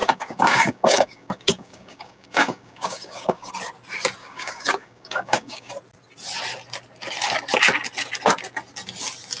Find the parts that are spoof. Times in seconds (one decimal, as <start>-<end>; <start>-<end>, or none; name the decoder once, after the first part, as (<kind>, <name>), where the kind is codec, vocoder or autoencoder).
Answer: 0.0-3.5 (codec, DAC); 4.2-5.7

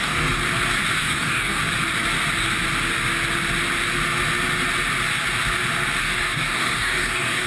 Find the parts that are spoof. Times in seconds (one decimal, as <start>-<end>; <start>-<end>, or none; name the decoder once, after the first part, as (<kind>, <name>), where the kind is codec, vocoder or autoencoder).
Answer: 0.0-0.4 (codec, DAC); 1.0-1.6; 6.0-7.5